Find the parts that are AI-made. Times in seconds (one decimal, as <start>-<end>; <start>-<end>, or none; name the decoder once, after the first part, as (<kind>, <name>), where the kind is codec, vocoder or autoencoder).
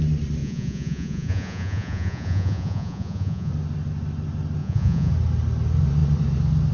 0.4-3.5 (vocoder, Vocos); 4.6-5.1